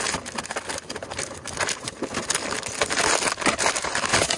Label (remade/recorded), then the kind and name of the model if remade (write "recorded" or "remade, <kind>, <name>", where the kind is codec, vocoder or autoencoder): recorded